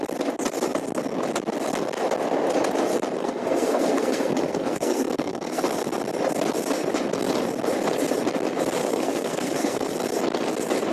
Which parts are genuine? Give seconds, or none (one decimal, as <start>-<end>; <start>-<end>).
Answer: 0.0-3.2; 5.6-8.8; 9.9-10.9